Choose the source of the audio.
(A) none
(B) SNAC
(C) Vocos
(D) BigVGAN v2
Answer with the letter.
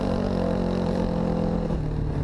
A